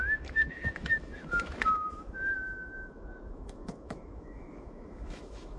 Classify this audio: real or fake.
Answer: fake